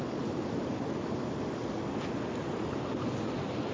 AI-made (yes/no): no